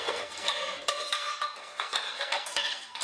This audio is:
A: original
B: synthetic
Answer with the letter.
B